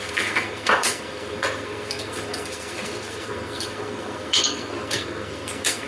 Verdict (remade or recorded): remade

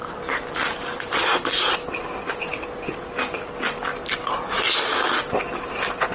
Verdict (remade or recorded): recorded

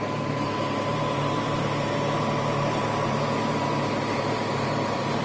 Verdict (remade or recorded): remade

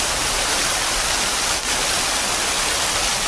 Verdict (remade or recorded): recorded